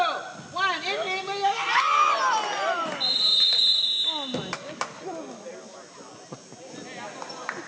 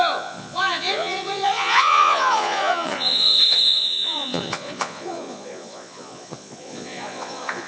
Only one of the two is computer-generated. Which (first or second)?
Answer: second